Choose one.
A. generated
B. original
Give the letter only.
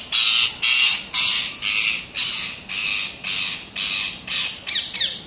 B